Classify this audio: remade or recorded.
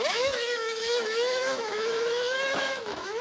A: remade